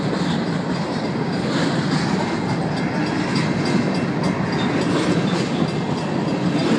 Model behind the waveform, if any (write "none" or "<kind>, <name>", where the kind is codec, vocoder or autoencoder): none